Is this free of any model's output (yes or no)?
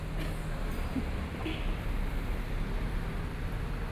yes